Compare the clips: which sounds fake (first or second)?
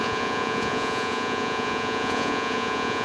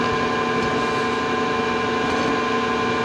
first